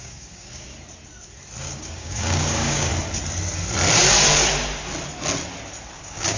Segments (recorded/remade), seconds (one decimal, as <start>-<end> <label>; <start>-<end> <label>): 0.0-0.7 remade; 0.7-1.6 recorded; 1.6-2.9 remade; 2.9-5.9 recorded; 5.9-6.4 remade